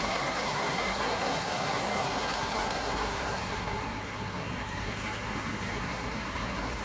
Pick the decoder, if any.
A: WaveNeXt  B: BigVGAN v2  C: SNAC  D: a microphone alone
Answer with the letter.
C